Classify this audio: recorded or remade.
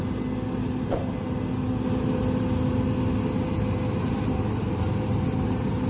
recorded